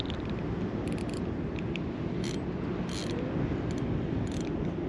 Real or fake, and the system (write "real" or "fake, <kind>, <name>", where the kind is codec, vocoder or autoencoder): real